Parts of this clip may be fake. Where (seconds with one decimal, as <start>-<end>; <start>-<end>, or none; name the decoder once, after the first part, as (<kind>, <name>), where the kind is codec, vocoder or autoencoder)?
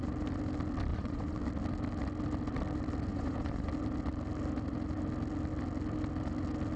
0.9-1.4 (vocoder, Vocos); 3.1-3.7